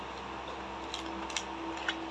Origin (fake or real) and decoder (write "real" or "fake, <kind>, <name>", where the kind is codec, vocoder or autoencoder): real